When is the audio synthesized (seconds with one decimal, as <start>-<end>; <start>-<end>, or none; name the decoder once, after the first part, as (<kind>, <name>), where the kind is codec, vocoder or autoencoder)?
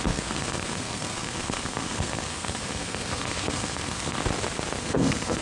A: 0.0-4.2 (codec, SNAC); 4.8-5.4